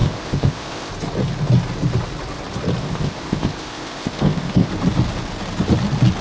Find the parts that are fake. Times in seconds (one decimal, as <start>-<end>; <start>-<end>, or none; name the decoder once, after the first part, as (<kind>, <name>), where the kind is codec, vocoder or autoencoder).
0.0-0.9 (codec, ZipCodec); 2.8-4.7